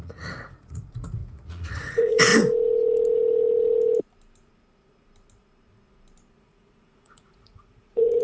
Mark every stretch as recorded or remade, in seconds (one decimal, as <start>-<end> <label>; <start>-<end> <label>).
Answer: 0.0-2.3 remade; 2.3-6.4 recorded; 6.4-8.2 remade